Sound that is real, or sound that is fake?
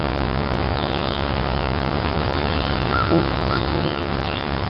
fake